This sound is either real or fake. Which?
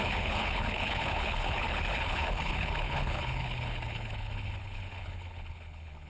fake